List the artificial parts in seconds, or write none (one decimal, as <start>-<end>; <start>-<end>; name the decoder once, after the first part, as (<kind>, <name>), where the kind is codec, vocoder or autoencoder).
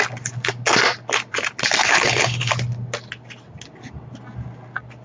1.8-2.5 (codec, HILCodec)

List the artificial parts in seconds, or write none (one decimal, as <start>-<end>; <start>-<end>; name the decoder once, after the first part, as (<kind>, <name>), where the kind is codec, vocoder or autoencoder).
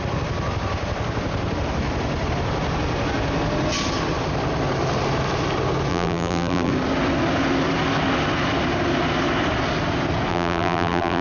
5.9-6.7 (vocoder, BigVGAN v2); 10.3-11.2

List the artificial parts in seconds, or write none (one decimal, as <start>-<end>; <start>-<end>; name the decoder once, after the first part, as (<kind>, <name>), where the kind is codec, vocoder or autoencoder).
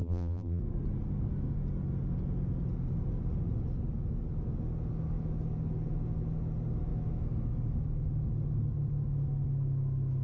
0.0-0.6 (vocoder, BigVGAN v2)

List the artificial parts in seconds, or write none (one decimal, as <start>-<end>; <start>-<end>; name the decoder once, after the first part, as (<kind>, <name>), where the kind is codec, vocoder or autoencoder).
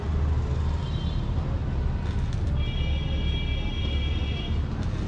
0.0-1.6 (vocoder, BigVGAN v2)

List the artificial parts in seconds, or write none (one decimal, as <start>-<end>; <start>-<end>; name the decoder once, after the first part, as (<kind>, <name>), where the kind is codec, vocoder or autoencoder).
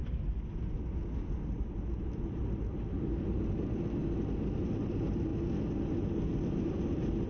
none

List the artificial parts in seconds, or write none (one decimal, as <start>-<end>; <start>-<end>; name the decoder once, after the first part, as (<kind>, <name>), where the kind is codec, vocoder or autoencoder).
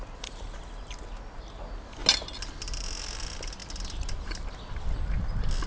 none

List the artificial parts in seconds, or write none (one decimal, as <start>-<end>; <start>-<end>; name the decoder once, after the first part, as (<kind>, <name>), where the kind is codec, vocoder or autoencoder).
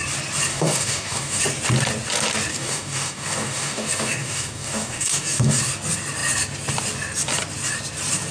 0.5-1.4 (codec, DAC); 2.5-5.6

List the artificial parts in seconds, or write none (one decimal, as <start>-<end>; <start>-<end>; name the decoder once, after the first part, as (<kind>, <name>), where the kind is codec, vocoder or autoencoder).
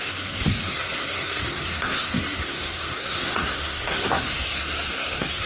0.0-5.5 (codec, SNAC)